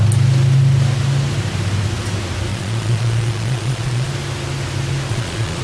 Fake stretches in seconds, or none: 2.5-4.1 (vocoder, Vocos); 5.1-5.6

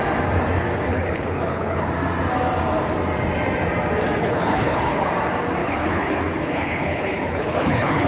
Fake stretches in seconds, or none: 0.9-1.9 (codec, HILCodec); 4.2-5.1; 5.6-8.1

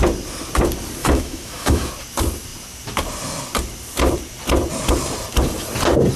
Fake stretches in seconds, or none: 1.0-1.9 (autoencoder, DAC-VAE)

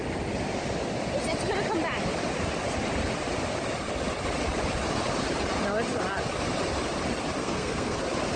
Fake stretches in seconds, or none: 7.4-8.0 (codec, SNAC)

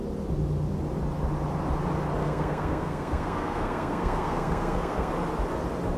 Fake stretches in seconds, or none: 2.2-5.1 (codec, SNAC)